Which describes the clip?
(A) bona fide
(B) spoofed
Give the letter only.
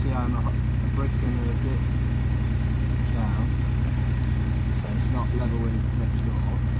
A